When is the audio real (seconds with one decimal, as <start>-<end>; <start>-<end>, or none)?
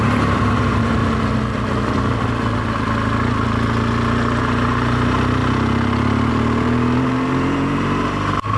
1.0-4.4; 5.4-6.3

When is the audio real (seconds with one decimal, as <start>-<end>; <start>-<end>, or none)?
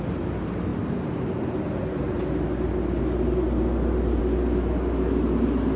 0.0-5.8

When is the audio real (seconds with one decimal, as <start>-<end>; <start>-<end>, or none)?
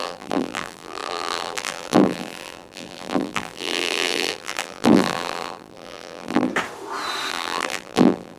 6.5-7.3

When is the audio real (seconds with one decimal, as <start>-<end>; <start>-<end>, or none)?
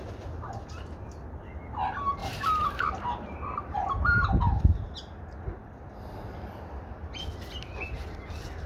0.0-2.2; 4.2-8.7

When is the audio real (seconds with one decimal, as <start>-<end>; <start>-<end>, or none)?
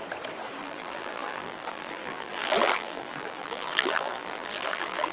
0.0-0.6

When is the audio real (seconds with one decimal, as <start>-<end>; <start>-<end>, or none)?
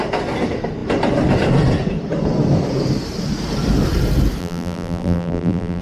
0.0-4.4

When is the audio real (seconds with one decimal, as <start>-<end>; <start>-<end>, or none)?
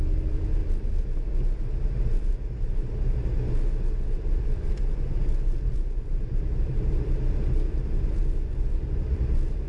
0.6-4.1